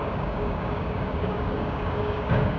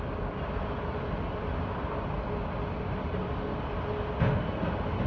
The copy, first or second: first